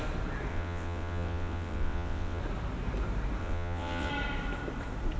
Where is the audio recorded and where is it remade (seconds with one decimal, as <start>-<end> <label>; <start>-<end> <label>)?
0.0-0.5 recorded; 0.5-2.4 remade; 2.4-3.4 recorded; 3.4-4.1 remade; 4.1-5.2 recorded